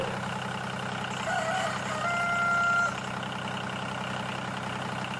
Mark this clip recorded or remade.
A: recorded